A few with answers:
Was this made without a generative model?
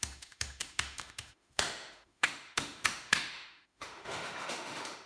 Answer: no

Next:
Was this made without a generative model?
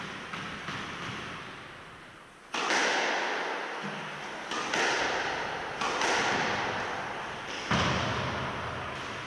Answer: yes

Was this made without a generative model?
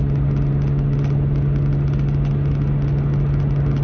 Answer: yes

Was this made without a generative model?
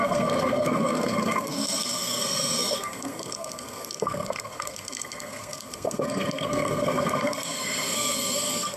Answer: no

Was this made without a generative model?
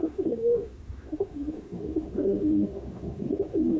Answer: no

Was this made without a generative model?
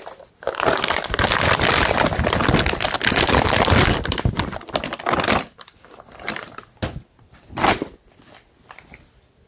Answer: yes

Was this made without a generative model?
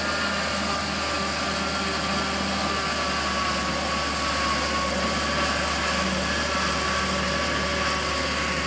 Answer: yes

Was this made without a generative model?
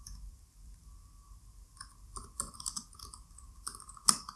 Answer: yes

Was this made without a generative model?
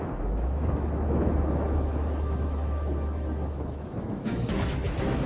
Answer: no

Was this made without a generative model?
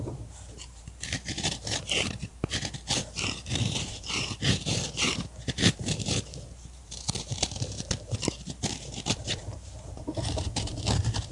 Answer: no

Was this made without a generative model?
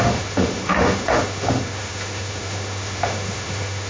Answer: no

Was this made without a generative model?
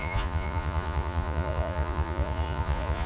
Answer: no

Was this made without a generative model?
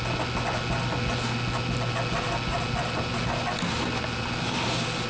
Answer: yes